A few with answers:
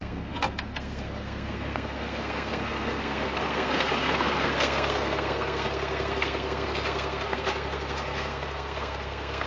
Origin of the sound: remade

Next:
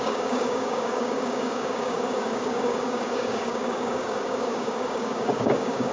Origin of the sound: remade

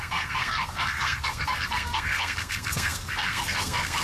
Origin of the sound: remade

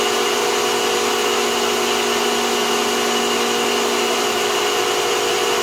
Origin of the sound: recorded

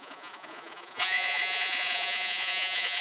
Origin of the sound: remade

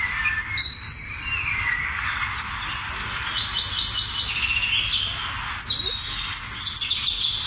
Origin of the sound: recorded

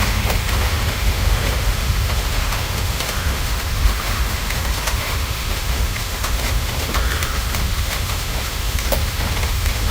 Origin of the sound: remade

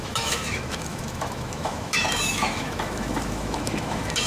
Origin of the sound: remade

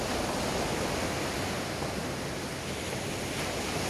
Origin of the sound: recorded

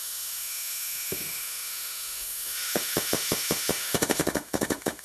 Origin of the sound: remade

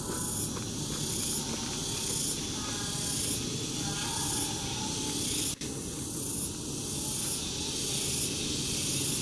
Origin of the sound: recorded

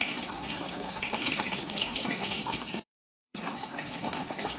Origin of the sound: remade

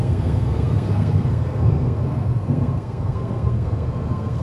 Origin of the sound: remade